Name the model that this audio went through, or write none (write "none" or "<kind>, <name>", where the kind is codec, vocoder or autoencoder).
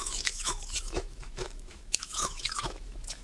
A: autoencoder, DAC-VAE